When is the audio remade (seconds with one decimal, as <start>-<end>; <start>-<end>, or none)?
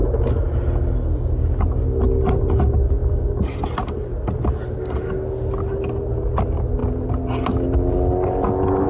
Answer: none